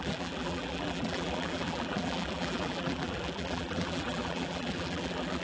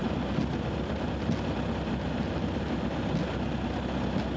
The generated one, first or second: first